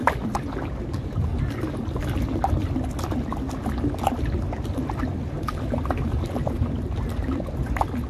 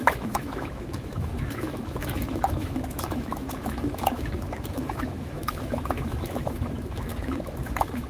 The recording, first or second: first